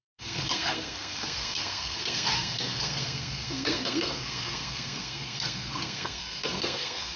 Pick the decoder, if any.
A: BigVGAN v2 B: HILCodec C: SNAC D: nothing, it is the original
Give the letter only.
C